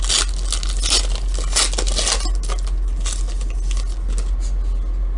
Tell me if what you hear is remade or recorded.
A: recorded